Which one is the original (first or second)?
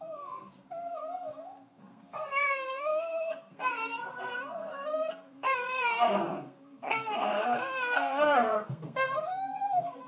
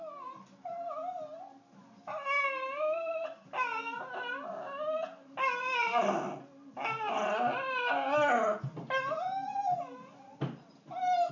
second